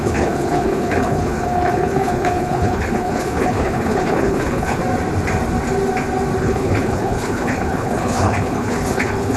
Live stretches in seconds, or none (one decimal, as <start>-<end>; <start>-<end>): 4.8-6.4